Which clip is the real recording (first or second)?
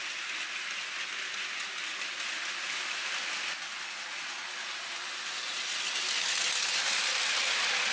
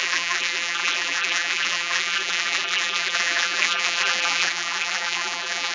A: first